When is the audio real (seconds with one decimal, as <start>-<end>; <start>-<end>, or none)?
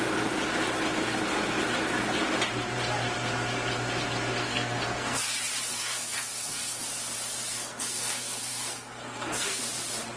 0.0-4.4; 5.2-5.7; 6.8-7.5; 9.6-10.2